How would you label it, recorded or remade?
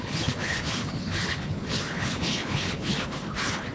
remade